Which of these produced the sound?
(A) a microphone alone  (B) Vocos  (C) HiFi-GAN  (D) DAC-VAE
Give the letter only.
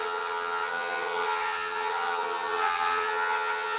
C